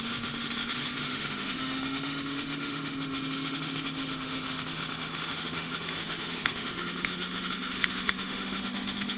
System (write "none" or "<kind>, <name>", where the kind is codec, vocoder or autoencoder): autoencoder, DAC-VAE